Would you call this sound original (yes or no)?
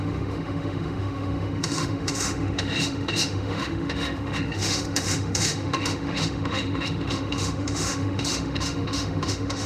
no